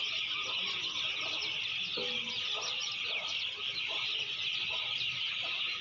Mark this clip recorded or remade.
recorded